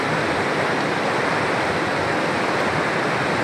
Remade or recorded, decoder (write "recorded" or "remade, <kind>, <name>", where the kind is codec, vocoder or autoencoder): recorded